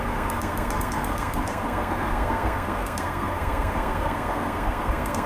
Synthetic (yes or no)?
yes